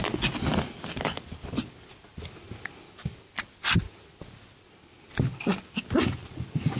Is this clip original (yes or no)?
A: yes